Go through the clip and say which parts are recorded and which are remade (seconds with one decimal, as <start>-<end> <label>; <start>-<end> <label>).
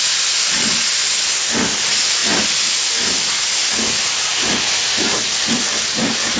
0.0-6.4 recorded